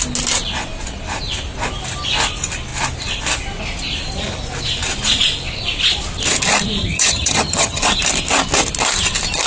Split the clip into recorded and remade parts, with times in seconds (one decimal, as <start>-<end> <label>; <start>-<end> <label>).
0.0-6.8 recorded; 6.8-7.8 remade; 7.8-9.5 recorded